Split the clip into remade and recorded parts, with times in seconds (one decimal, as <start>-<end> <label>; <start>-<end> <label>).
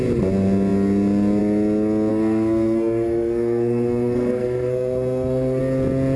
0.0-2.1 recorded; 2.1-5.6 remade; 5.6-6.2 recorded